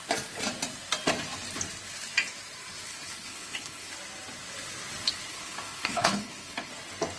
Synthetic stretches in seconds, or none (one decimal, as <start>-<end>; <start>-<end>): 2.9-3.9; 5.3-6.7